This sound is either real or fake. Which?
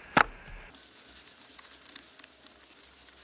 real